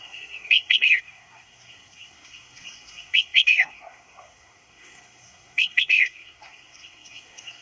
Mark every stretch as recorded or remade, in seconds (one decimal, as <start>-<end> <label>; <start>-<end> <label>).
0.0-7.6 remade

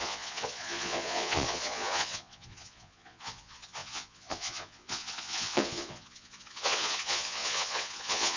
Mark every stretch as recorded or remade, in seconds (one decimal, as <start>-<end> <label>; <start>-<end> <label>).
0.0-8.4 remade